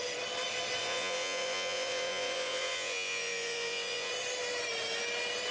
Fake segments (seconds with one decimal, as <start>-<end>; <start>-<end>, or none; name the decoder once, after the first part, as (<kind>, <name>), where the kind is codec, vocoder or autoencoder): 0.8-4.1 (vocoder, Vocos)